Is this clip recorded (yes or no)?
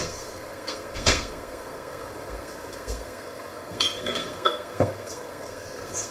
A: no